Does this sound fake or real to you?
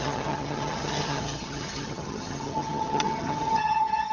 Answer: fake